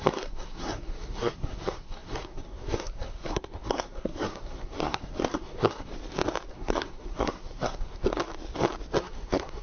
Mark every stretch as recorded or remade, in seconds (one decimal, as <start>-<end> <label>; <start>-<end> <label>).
0.0-5.9 remade; 5.9-6.5 recorded; 6.5-8.2 remade; 8.2-9.0 recorded; 9.0-9.6 remade